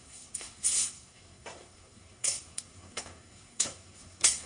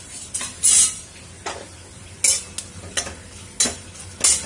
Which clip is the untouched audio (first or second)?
second